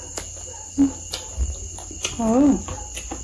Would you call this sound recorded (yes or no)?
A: yes